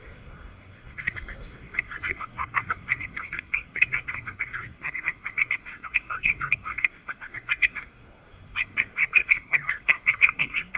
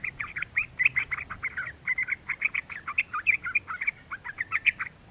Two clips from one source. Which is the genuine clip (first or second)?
second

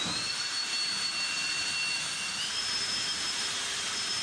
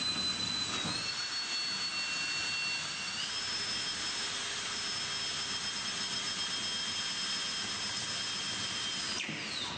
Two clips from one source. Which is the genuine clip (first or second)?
second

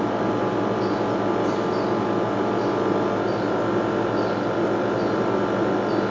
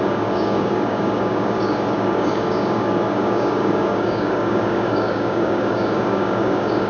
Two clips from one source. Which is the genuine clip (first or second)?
first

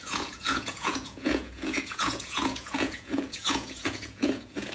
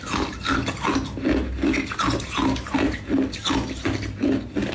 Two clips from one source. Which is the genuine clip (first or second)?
second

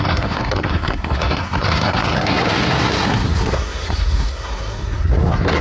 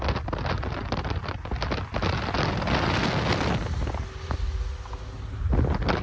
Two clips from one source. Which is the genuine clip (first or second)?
second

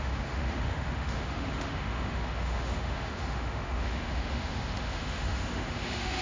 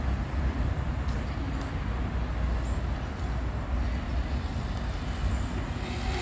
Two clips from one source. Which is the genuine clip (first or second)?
second